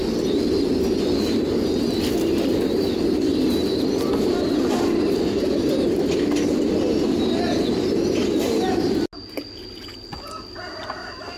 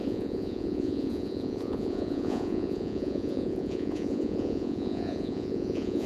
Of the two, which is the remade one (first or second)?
second